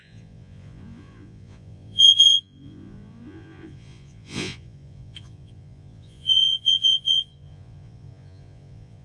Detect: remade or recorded remade